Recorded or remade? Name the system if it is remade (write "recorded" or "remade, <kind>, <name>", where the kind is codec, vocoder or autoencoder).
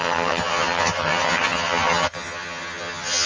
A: remade, vocoder, HiFi-GAN